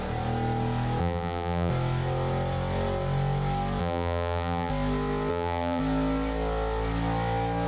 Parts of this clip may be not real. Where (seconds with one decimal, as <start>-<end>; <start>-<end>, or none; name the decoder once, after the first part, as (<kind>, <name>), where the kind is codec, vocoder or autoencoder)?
1.0-1.7 (vocoder, BigVGAN v2); 3.8-4.7; 5.3-5.8